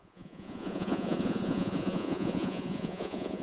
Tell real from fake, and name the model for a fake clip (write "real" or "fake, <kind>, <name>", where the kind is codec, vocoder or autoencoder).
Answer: fake, vocoder, Vocos